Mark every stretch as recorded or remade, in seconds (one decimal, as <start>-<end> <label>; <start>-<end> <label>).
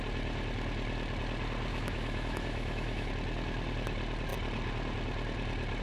0.0-1.7 recorded; 1.7-3.1 remade; 3.1-5.8 recorded